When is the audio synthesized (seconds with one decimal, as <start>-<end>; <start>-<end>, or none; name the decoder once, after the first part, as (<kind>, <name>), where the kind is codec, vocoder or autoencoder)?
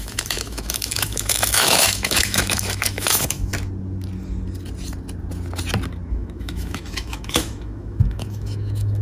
0.0-3.5 (autoencoder, DAC-VAE); 6.1-9.0